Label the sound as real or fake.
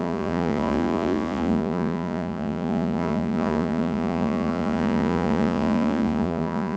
fake